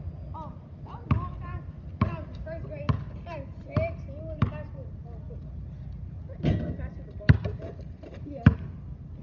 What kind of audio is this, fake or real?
real